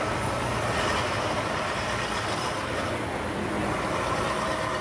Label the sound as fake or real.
real